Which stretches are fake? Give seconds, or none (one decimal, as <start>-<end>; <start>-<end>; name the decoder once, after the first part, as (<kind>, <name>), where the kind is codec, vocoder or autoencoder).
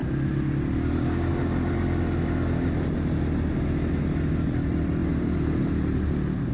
none